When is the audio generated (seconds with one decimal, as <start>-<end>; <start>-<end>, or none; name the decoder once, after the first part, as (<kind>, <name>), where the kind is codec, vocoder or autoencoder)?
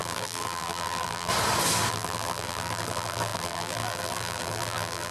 0.0-1.3 (vocoder, BigVGAN v2); 1.9-5.1